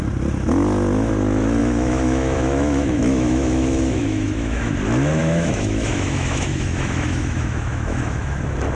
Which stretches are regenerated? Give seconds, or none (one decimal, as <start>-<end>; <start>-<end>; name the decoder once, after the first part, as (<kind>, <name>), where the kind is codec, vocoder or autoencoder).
1.6-4.7 (autoencoder, DAC-VAE); 5.2-8.4

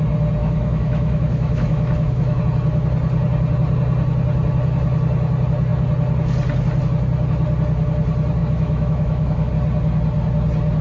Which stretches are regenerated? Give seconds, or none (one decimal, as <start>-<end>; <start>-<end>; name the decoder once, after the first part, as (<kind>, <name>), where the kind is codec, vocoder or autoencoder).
0.4-2.4 (autoencoder, DAC-VAE); 8.4-9.5

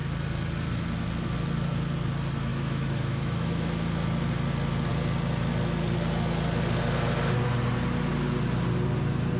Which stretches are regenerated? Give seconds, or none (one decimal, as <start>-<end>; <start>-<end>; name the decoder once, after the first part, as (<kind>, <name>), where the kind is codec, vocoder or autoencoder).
2.5-3.8 (autoencoder, DAC-VAE)

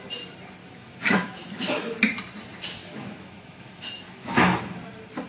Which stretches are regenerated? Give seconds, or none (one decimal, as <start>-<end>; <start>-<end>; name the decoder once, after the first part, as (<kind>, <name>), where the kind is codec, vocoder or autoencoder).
0.6-2.0 (autoencoder, DAC-VAE); 2.8-4.6

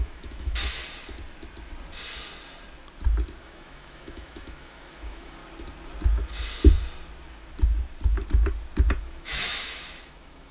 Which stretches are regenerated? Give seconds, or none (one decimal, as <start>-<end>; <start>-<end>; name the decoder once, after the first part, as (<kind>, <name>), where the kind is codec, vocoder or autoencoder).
0.0-0.8 (autoencoder, DAC-VAE); 3.4-5.4; 9.0-10.5